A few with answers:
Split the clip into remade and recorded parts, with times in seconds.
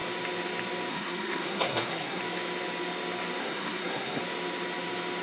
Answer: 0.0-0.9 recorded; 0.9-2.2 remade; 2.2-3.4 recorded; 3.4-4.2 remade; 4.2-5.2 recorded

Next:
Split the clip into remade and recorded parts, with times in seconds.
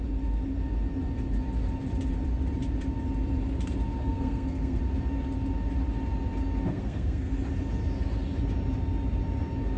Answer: 0.0-4.0 recorded; 4.0-4.8 remade; 4.8-6.7 recorded; 6.7-7.3 remade; 7.3-9.8 recorded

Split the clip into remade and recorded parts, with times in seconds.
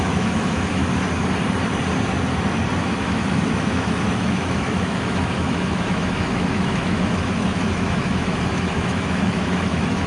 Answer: 0.0-0.8 remade; 0.8-2.8 recorded; 2.8-10.1 remade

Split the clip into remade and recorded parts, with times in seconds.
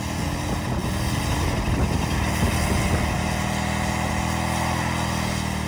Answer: 0.0-5.7 recorded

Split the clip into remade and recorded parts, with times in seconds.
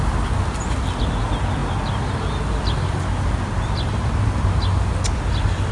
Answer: 0.0-5.7 recorded